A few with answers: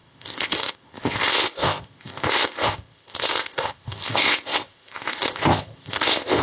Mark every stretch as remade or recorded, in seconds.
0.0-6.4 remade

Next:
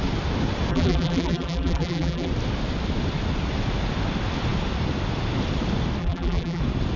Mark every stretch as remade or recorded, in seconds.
0.0-0.7 recorded; 0.7-2.3 remade; 2.3-6.0 recorded; 6.0-6.6 remade; 6.6-7.0 recorded